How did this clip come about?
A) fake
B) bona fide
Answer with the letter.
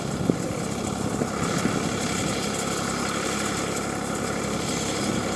B